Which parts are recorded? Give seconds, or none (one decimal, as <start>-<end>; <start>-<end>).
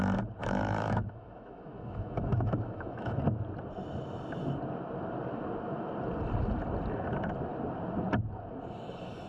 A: 0.0-0.4; 3.2-9.3